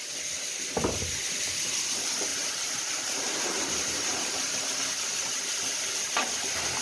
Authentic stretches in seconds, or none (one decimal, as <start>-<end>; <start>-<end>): 0.0-2.3; 4.6-6.8